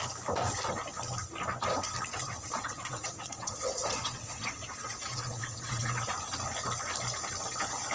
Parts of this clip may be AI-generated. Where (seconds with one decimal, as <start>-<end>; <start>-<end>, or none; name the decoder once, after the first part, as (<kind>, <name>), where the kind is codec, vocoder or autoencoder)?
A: 2.2-6.1 (vocoder, WaveNeXt)